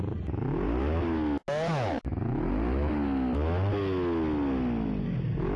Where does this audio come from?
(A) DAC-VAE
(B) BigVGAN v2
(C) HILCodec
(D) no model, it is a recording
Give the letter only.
D